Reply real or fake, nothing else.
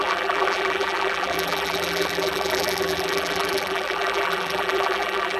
fake